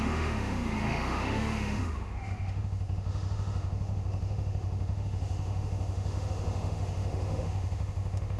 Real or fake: fake